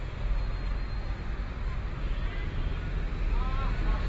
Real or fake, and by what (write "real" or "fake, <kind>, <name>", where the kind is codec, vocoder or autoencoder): real